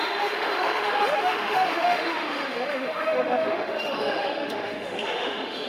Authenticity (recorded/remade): remade